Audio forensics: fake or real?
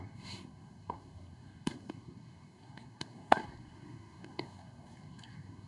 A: fake